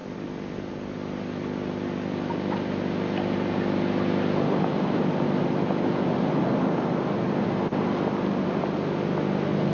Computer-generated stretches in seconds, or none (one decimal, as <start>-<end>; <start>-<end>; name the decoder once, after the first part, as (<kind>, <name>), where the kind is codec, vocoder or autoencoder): none